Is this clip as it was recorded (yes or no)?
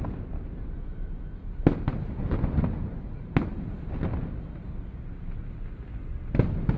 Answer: yes